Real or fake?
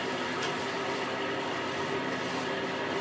real